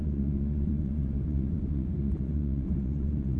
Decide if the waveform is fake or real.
fake